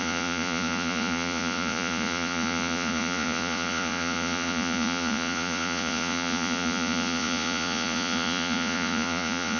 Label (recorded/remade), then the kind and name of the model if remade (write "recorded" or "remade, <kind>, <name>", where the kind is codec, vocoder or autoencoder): remade, vocoder, Vocos